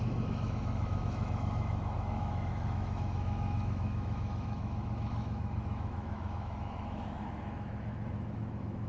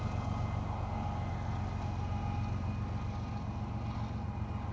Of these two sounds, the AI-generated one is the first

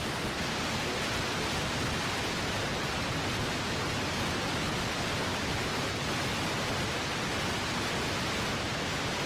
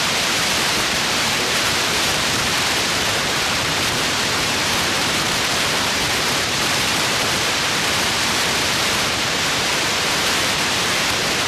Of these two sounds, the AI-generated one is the second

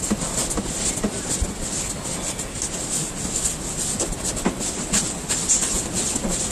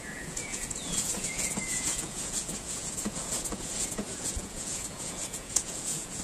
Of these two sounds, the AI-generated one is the second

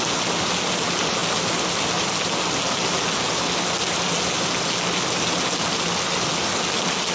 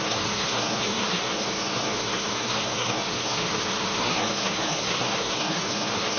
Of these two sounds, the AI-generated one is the second